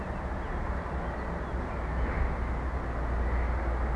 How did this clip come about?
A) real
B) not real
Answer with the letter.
A